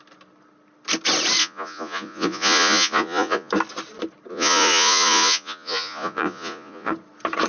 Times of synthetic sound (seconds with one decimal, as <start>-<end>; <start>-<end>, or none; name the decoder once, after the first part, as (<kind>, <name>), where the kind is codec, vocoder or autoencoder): 1.4-3.5 (vocoder, Vocos); 4.3-6.9